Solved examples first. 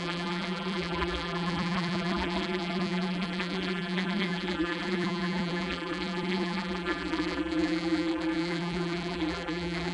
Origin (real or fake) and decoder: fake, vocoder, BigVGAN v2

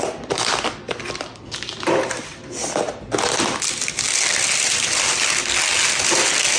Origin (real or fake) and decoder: real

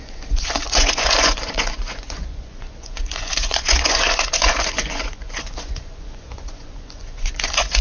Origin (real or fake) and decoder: fake, vocoder, Vocos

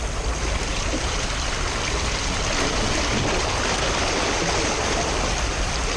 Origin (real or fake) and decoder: real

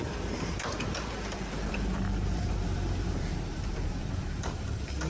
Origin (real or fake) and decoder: fake, vocoder, BigVGAN v2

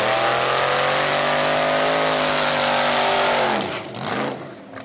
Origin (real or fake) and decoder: real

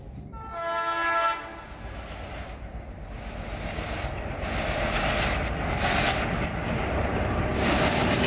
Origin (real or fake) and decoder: real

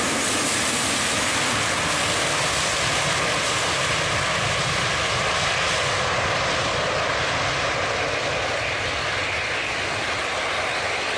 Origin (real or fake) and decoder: real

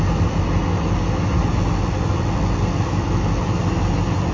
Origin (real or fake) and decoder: real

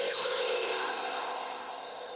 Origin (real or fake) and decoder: fake, codec, ZipCodec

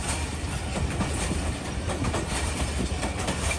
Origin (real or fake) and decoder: real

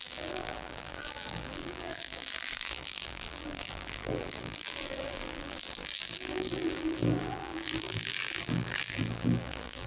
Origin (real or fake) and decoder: fake, vocoder, BigVGAN v2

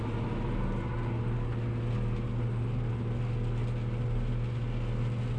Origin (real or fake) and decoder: real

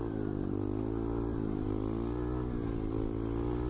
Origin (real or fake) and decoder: real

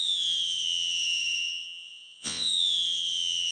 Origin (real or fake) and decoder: fake, vocoder, WaveNeXt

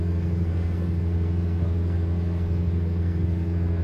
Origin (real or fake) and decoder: fake, codec, SNAC